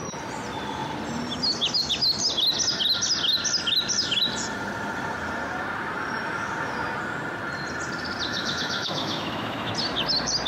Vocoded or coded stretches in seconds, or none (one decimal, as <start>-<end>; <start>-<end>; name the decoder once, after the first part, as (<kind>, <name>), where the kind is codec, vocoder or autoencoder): 8.3-9.7 (autoencoder, DAC-VAE)